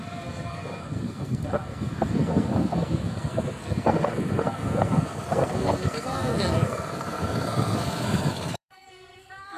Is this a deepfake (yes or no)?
yes